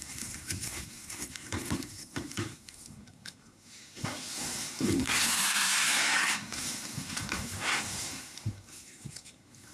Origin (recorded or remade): remade